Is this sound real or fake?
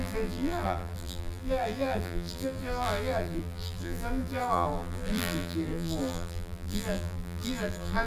fake